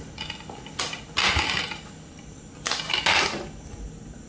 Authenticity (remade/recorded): recorded